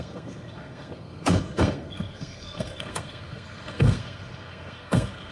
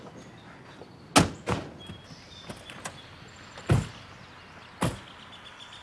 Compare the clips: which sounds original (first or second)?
second